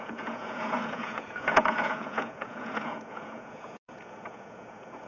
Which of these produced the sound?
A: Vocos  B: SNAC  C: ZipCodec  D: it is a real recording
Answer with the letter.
A